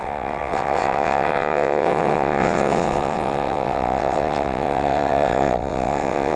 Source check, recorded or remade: remade